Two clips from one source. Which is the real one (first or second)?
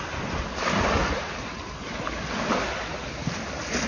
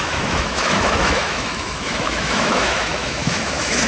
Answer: first